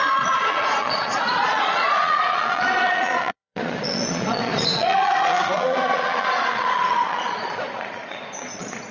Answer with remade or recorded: remade